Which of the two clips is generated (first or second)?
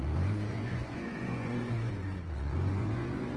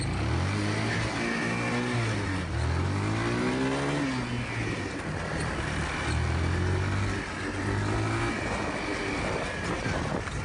first